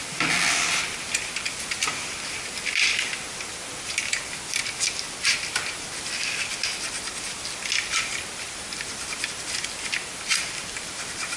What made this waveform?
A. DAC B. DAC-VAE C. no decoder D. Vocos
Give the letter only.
C